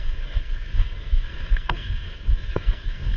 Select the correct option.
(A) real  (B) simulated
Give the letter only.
B